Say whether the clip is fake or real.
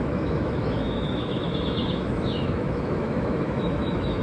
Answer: fake